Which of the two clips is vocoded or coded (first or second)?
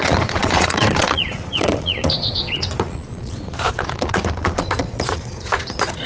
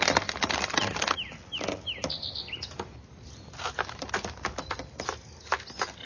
first